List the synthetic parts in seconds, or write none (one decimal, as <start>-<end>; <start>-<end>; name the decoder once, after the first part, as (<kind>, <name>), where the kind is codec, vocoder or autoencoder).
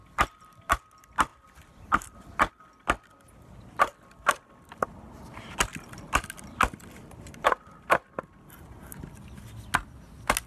none